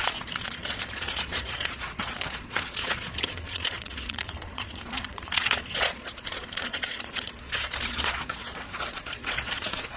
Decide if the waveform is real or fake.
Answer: fake